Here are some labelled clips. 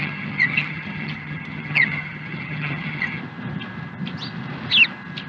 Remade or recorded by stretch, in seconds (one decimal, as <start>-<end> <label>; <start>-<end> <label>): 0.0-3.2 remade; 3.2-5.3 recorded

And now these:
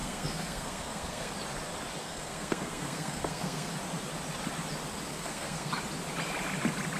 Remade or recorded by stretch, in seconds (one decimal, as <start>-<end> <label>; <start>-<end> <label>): 0.0-1.3 remade; 1.3-2.0 recorded; 2.0-3.7 remade; 3.7-5.1 recorded; 5.1-5.7 remade; 5.7-7.0 recorded

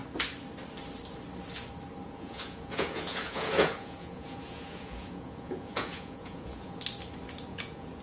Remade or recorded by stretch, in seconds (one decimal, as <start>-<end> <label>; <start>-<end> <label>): 0.0-2.0 recorded; 2.0-6.8 remade; 6.8-7.5 recorded; 7.5-8.0 remade

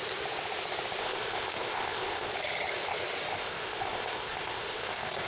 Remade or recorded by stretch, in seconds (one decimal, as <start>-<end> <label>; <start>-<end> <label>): 0.0-1.0 recorded; 1.0-2.3 remade; 2.3-3.3 recorded; 3.3-5.3 remade

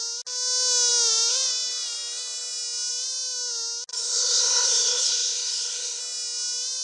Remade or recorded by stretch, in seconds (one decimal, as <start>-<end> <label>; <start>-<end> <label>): 0.0-3.9 recorded; 3.9-6.0 remade; 6.0-6.8 recorded